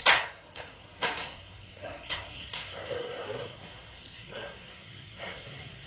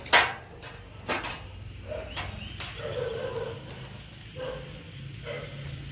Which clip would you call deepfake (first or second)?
first